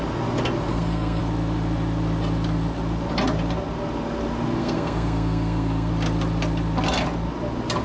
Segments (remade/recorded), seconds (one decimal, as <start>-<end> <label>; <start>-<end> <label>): 0.0-0.7 recorded; 0.7-1.2 remade; 1.2-4.6 recorded; 4.6-5.9 remade; 5.9-7.8 recorded